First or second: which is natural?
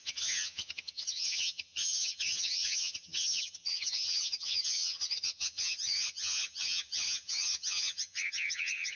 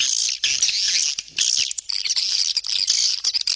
second